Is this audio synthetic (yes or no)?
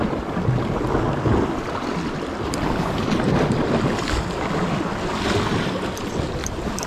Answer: no